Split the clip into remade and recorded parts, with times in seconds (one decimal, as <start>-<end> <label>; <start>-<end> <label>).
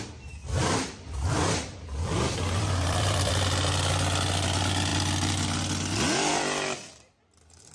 0.0-0.4 recorded; 0.4-3.3 remade; 3.3-7.7 recorded